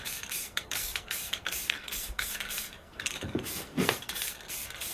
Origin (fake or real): fake